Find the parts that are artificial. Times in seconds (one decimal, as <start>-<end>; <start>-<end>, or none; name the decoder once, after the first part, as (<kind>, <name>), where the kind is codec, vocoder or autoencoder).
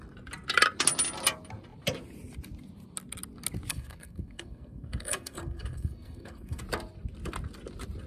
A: 3.7-6.6 (codec, SNAC)